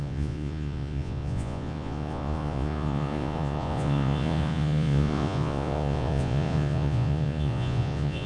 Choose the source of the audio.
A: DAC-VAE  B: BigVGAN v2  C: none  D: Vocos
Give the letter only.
D